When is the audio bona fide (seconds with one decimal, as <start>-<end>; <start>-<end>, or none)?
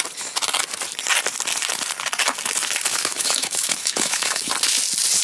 0.0-2.9; 4.5-5.2